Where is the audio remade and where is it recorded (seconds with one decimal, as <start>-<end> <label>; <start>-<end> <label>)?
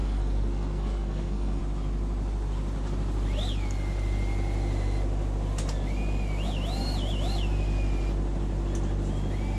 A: 0.0-1.6 remade; 1.6-9.6 recorded